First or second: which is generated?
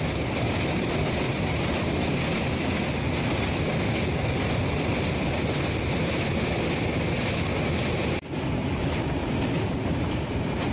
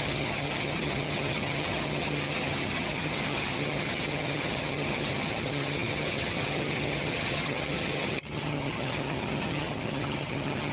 second